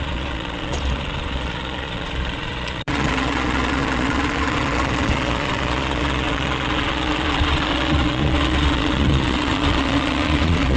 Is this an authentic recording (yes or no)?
no